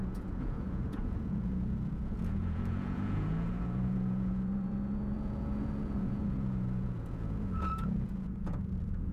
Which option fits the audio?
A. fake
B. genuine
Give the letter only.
A